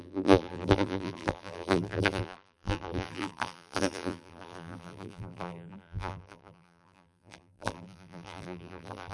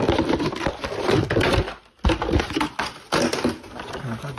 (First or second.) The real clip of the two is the second